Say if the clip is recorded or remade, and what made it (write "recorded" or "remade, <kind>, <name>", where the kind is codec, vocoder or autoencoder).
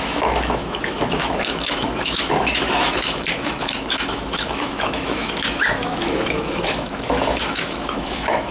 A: remade, autoencoder, DAC-VAE